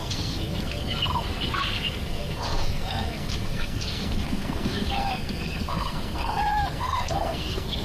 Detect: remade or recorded remade